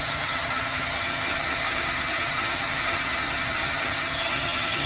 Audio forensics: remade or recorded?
remade